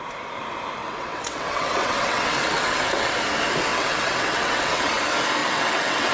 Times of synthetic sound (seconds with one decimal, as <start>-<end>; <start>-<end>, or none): 0.8-3.1; 3.7-5.0; 5.4-6.1